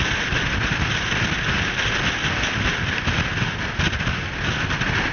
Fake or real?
real